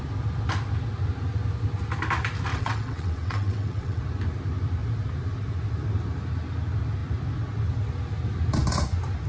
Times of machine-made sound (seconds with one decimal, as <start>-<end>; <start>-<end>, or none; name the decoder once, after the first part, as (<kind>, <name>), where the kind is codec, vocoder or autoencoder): 2.5-4.0 (vocoder, WaveNeXt)